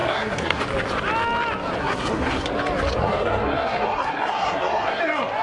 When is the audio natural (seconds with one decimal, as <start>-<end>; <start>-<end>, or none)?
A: 0.6-1.8; 2.5-3.0; 5.0-5.4